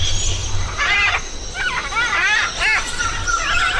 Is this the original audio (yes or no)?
yes